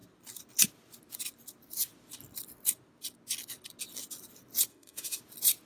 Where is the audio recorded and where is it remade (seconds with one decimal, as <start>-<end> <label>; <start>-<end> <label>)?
0.0-4.7 recorded; 4.7-5.2 remade; 5.2-5.7 recorded